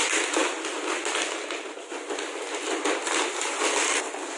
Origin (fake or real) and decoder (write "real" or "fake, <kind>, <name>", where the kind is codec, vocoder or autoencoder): real